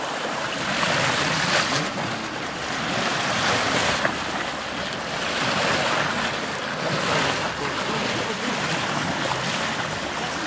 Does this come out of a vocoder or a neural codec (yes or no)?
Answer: no